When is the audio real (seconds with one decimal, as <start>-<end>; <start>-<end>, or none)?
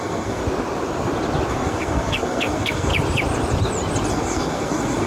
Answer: 0.4-1.5; 2.9-4.1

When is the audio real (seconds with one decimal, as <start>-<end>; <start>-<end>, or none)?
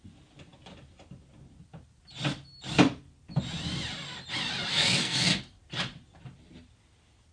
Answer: 0.0-4.7; 5.4-7.3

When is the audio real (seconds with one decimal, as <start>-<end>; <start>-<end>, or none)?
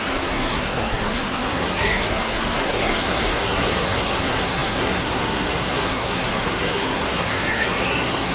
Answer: none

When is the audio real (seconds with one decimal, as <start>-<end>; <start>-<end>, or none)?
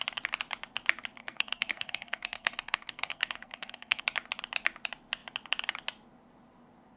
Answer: 0.0-1.2; 4.0-7.0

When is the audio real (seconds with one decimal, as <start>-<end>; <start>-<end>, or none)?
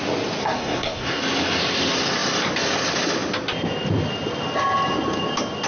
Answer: 0.0-0.4; 1.2-5.7